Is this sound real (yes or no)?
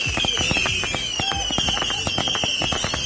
yes